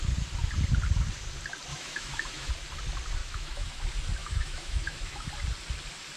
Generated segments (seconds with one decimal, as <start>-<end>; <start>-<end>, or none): 1.7-2.5; 3.2-3.8; 4.2-5.3